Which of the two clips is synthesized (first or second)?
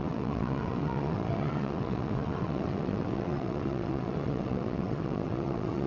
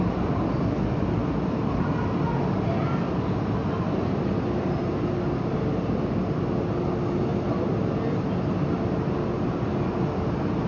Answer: first